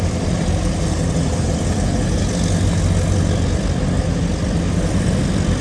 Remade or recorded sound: recorded